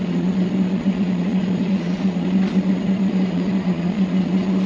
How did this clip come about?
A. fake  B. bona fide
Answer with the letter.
A